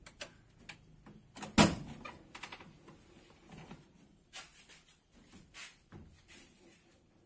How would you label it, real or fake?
real